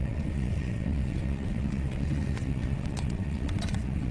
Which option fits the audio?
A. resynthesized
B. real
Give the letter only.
A